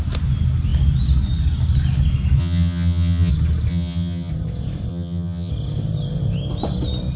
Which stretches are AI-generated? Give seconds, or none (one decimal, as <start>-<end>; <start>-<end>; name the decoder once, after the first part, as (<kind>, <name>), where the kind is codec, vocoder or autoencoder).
2.4-3.3 (vocoder, HiFi-GAN); 3.7-4.3; 4.9-5.5